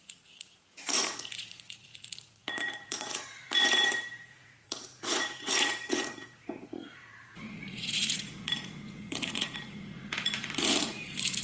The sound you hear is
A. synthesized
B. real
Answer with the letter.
A